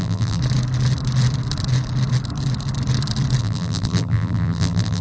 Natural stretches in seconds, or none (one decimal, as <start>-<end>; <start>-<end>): 0.4-3.4